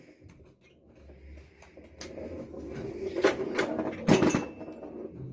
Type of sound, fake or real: real